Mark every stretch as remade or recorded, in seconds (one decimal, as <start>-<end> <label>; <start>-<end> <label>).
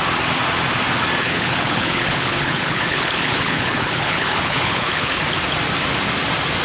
0.0-1.2 recorded; 1.2-5.2 remade; 5.2-6.6 recorded